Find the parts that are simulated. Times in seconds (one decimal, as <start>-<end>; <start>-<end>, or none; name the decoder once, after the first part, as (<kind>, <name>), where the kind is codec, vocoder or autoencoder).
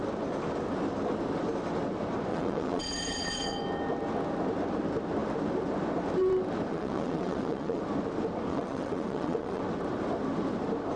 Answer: 2.3-3.6 (vocoder, WaveNeXt); 6.7-7.8; 8.5-9.6